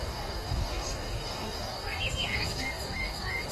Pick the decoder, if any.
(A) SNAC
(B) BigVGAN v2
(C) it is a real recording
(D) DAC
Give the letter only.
D